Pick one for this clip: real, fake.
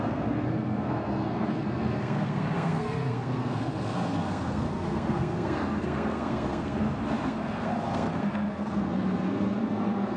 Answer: fake